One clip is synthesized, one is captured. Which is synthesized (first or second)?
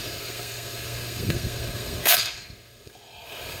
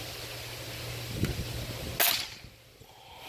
first